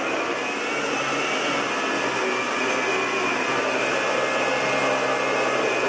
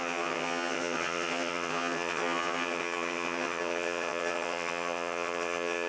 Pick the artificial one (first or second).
second